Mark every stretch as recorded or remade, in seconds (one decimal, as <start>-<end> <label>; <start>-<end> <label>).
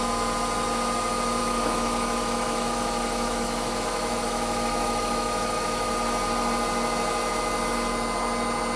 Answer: 0.0-1.4 recorded; 1.4-5.9 remade; 5.9-8.8 recorded